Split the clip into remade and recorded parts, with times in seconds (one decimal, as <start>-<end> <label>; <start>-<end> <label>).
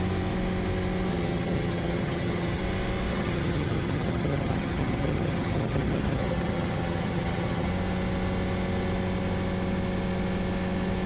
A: 0.0-1.1 recorded; 1.1-2.6 remade; 2.6-3.1 recorded; 3.1-7.7 remade; 7.7-11.1 recorded